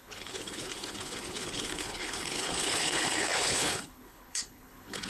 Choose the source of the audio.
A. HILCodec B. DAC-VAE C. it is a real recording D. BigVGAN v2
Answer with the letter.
A